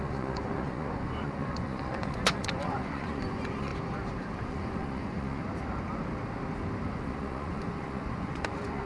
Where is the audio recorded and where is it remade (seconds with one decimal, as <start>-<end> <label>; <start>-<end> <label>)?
0.0-3.7 remade; 3.7-4.4 recorded; 4.4-5.4 remade; 5.4-6.9 recorded; 6.9-8.9 remade